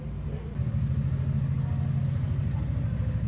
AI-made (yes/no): no